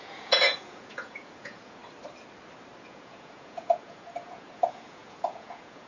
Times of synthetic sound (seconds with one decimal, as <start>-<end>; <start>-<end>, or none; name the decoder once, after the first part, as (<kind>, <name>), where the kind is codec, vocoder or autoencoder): 0.0-1.8 (vocoder, Vocos); 2.8-5.9